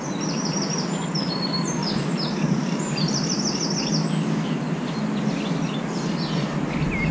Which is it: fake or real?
real